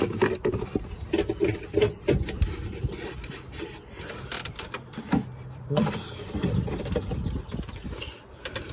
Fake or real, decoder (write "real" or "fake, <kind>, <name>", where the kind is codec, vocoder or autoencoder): fake, vocoder, BigVGAN v2